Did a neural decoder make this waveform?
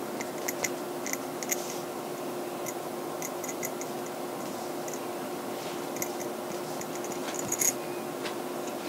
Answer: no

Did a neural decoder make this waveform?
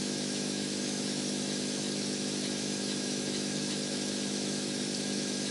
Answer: yes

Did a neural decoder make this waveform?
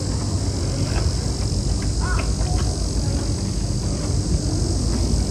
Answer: no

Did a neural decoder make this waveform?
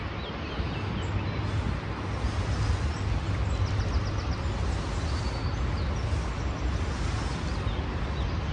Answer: no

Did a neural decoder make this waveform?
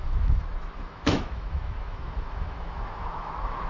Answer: yes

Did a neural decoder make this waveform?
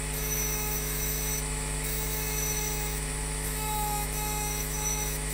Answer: yes